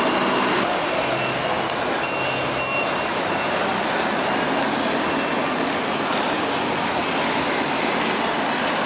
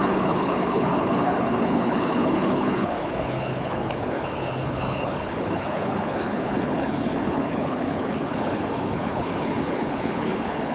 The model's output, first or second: second